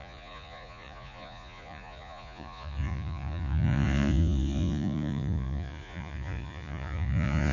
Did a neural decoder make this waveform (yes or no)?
yes